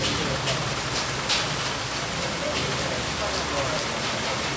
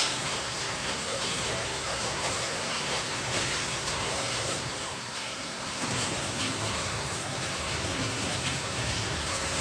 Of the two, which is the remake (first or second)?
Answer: second